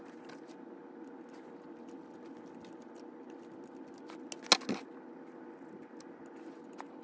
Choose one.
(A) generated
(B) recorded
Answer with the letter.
B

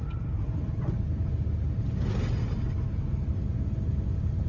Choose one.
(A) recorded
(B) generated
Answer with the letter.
A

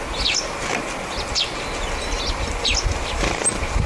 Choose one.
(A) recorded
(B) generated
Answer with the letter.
A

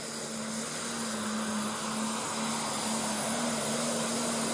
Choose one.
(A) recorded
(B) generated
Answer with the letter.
A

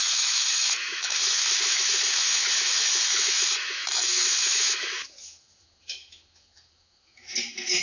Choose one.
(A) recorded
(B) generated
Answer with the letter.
B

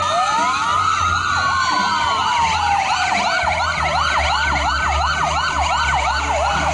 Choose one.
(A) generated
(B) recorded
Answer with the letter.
B